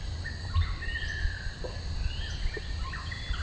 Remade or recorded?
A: recorded